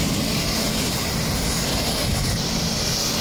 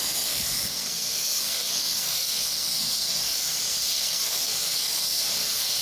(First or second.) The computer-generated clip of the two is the second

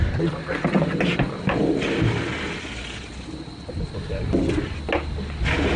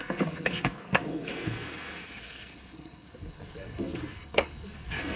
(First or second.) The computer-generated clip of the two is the second